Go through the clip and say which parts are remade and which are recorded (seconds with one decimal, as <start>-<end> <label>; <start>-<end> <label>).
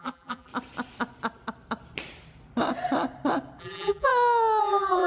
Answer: 0.0-0.5 remade; 0.5-3.6 recorded; 3.6-4.1 remade; 4.1-4.6 recorded; 4.6-5.1 remade